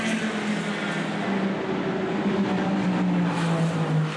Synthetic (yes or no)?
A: no